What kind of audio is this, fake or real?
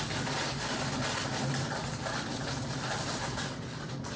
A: real